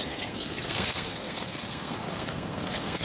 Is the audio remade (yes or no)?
yes